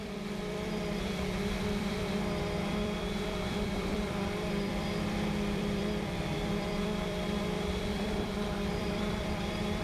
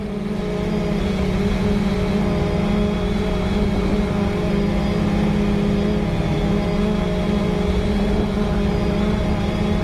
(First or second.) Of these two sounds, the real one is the second